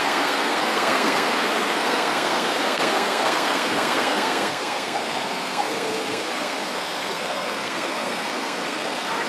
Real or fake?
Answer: fake